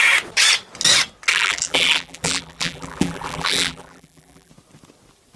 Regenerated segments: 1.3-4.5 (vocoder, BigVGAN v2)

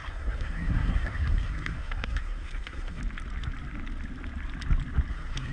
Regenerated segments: 0.0-3.0 (codec, SNAC); 5.1-5.5

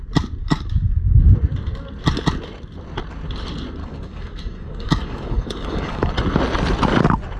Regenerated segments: 0.4-1.2 (codec, DAC); 3.8-6.1

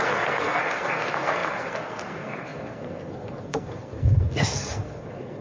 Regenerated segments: 0.0-5.4 (codec, SNAC)

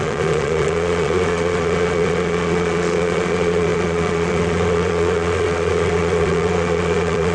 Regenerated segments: 0.0-7.3 (vocoder, Vocos)

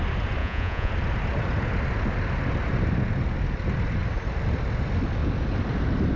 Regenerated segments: 0.4-0.9 (vocoder, Vocos)